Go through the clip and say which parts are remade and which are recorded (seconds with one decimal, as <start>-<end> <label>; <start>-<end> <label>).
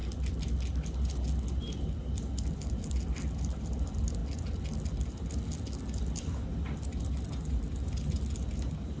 0.0-9.0 recorded